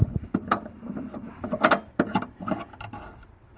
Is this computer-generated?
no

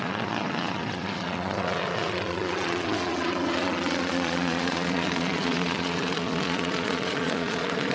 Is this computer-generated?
yes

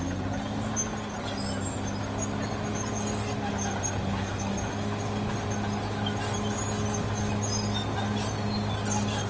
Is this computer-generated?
no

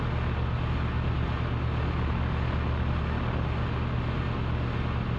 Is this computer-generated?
no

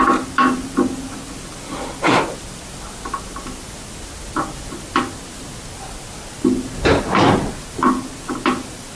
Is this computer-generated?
no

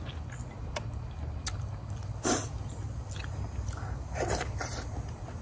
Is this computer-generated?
no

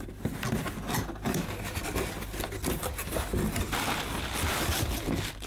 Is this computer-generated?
no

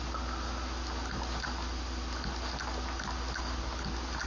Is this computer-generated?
no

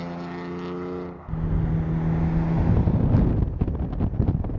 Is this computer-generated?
no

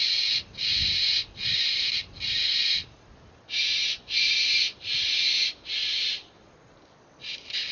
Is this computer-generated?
no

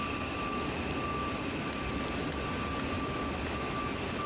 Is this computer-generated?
no